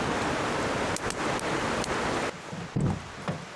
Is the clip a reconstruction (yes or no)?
no